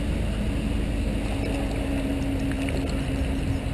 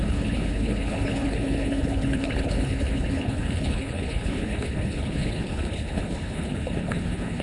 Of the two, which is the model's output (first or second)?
second